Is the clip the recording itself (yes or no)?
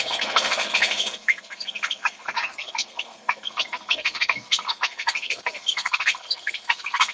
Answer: no